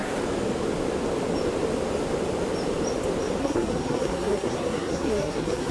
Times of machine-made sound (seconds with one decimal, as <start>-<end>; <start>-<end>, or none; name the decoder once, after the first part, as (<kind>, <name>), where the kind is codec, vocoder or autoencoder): 3.4-5.7 (codec, SNAC)